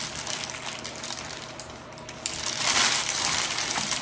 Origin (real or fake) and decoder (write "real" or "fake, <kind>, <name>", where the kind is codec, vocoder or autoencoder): fake, vocoder, BigVGAN v2